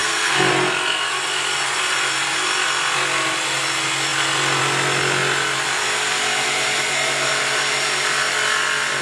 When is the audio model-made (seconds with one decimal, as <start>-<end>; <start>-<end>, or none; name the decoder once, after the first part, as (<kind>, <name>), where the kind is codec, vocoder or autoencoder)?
0.0-0.5 (codec, SNAC)